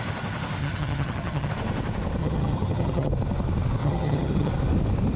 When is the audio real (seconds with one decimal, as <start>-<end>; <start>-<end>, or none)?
0.0-0.6; 1.5-2.2; 3.1-3.8; 4.5-5.2